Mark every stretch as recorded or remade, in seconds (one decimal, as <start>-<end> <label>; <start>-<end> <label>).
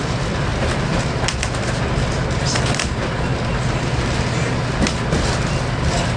0.0-0.5 remade; 0.5-1.8 recorded; 1.8-3.3 remade; 3.3-5.5 recorded; 5.5-6.2 remade